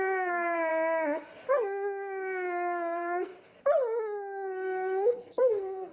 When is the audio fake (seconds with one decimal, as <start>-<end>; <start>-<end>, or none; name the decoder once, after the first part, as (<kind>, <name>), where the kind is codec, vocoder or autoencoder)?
0.0-0.7 (codec, SNAC); 1.5-3.3; 4.0-5.9